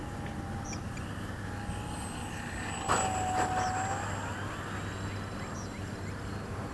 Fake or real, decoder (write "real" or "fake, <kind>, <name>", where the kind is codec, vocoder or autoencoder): real